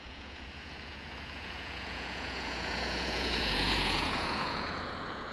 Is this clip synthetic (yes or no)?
yes